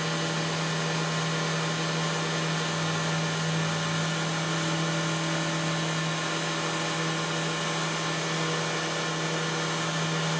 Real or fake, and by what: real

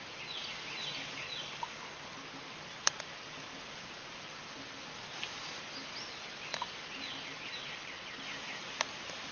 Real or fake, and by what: real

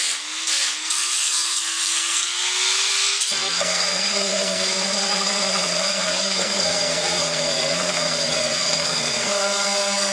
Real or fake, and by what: fake, codec, SNAC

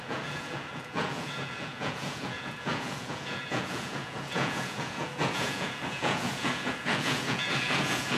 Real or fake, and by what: fake, vocoder, Vocos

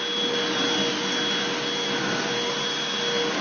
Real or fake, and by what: real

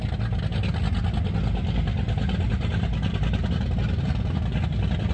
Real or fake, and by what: real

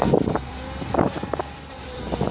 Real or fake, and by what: fake, vocoder, BigVGAN v2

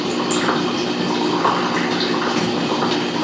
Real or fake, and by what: real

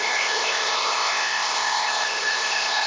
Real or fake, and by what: fake, codec, ZipCodec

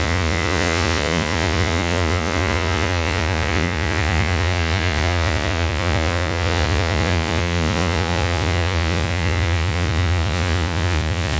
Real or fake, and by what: fake, vocoder, Vocos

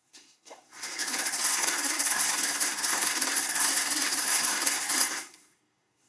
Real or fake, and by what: fake, codec, SNAC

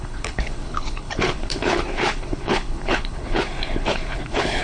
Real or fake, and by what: fake, codec, HILCodec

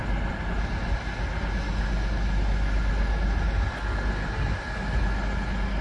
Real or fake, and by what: real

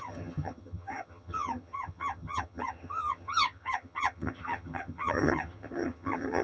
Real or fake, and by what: fake, vocoder, HiFi-GAN